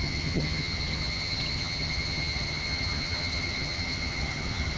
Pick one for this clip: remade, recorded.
remade